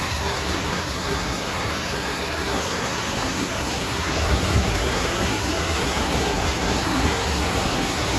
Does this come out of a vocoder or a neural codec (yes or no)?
yes